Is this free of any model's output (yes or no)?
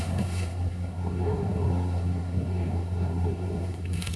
no